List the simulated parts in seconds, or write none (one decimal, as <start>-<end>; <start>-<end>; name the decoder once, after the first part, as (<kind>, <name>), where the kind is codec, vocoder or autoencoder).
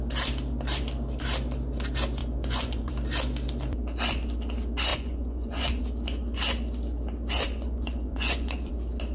2.2-2.9 (vocoder, Vocos); 4.9-5.8; 7.4-8.7